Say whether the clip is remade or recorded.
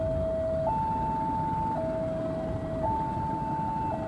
recorded